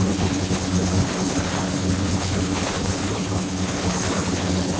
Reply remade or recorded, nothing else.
remade